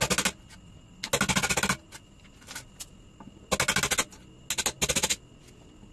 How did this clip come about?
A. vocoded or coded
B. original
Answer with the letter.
B